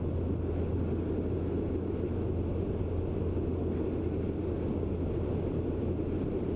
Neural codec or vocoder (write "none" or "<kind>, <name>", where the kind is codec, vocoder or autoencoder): none